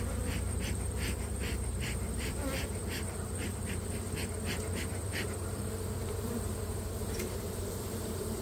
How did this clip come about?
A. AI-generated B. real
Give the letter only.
A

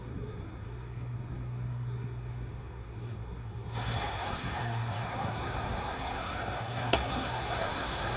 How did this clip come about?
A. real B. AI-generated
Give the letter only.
B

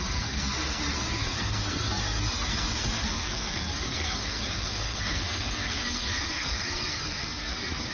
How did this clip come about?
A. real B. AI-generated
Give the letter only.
B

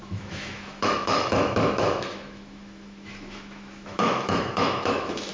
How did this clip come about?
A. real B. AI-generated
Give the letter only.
B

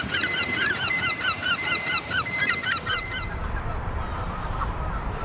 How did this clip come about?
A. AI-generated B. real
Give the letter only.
A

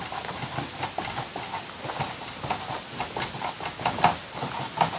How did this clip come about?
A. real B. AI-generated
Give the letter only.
A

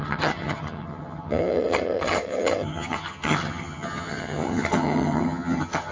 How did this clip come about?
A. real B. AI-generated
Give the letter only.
B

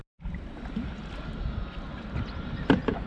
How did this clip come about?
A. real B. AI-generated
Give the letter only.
A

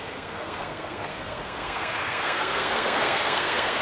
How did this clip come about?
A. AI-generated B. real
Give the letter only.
A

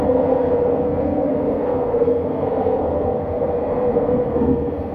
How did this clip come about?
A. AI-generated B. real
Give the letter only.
A